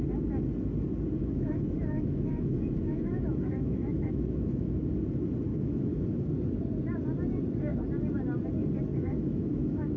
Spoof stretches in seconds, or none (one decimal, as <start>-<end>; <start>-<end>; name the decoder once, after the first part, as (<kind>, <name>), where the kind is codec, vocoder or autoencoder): 1.2-4.9 (autoencoder, DAC-VAE); 5.5-6.3; 8.9-10.0